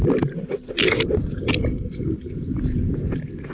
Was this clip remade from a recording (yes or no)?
no